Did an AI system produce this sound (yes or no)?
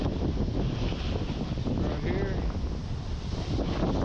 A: no